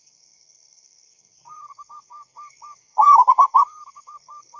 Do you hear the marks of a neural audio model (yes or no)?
yes